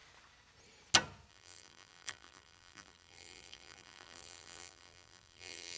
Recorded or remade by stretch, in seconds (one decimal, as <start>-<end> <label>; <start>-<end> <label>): 0.0-1.3 recorded; 1.3-5.8 remade